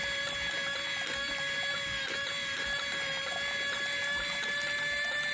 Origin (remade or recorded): recorded